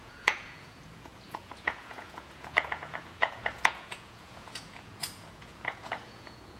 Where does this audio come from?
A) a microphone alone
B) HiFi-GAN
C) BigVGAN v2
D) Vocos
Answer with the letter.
D